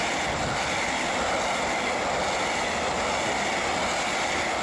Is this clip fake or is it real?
real